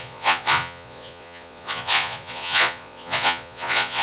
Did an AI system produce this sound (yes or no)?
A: yes